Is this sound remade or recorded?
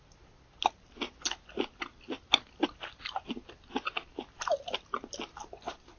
recorded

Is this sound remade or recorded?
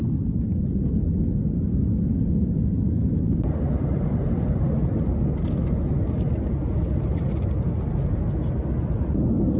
recorded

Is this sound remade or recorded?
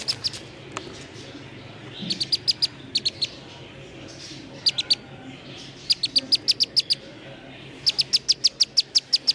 recorded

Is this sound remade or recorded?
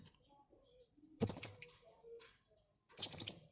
remade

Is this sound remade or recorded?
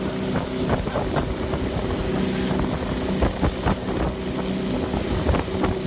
recorded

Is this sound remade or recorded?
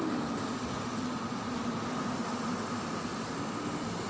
recorded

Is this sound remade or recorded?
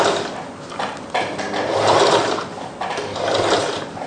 recorded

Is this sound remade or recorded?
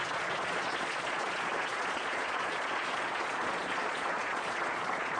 remade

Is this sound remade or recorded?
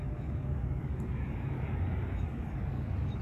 remade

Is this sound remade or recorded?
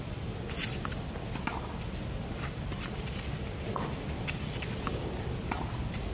recorded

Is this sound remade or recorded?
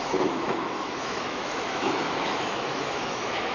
remade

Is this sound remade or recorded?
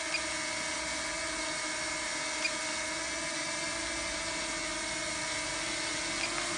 recorded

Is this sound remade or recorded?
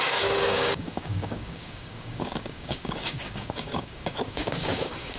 remade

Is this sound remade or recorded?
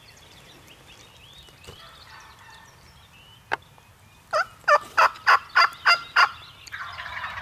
recorded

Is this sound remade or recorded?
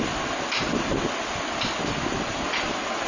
recorded